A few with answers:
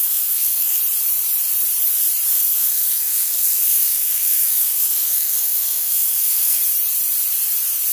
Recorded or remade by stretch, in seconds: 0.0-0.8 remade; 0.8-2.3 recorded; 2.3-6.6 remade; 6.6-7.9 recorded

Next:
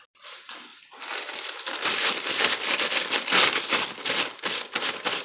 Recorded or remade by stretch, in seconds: 0.0-0.7 recorded; 0.7-3.8 remade; 3.8-5.2 recorded